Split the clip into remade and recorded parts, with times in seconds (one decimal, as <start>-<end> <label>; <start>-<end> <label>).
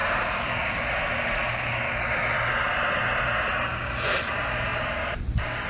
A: 0.0-5.7 recorded